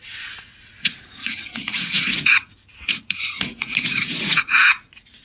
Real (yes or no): no